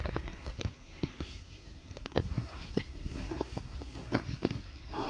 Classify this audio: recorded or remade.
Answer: remade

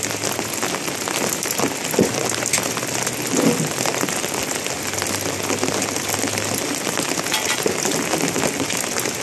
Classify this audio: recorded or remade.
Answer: recorded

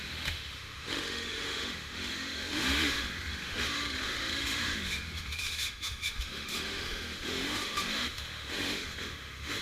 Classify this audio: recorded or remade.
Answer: remade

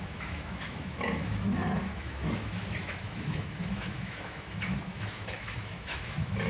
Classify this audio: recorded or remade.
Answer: remade